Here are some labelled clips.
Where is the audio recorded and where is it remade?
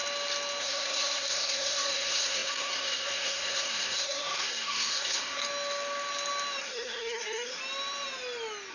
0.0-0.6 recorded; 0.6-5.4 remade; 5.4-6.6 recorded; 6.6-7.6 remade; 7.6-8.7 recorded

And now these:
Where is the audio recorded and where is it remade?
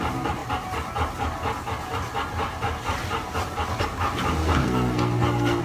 0.0-4.6 recorded; 4.6-5.6 remade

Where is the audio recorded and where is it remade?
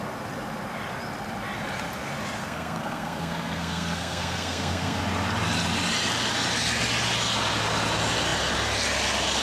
0.0-2.4 recorded; 2.4-5.0 remade; 5.0-9.4 recorded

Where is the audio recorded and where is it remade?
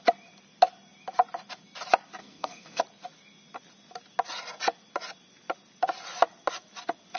0.0-2.2 recorded; 2.2-2.8 remade; 2.8-7.2 recorded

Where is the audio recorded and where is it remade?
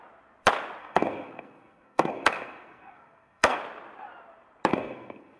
0.0-0.8 recorded; 0.8-3.6 remade; 3.6-4.7 recorded; 4.7-5.4 remade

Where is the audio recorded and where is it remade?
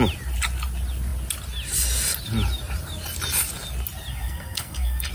0.0-4.1 recorded; 4.1-5.1 remade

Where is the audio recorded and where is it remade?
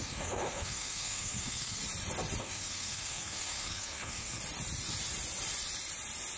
0.0-1.8 remade; 1.8-2.4 recorded; 2.4-4.4 remade; 4.4-6.4 recorded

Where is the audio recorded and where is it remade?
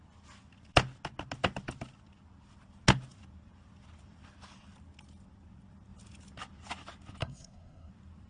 0.0-7.2 recorded; 7.2-7.9 remade; 7.9-8.3 recorded